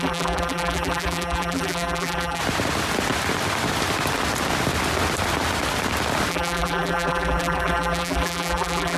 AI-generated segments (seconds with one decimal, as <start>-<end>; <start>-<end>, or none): 0.0-2.4; 6.3-9.0